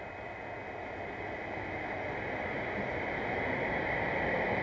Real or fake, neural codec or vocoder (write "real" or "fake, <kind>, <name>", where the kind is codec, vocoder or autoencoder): real